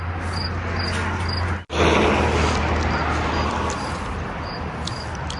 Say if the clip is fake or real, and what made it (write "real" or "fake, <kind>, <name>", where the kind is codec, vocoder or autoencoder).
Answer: real